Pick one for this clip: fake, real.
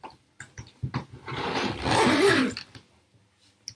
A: real